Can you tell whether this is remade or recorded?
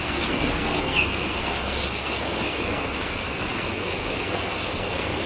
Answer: remade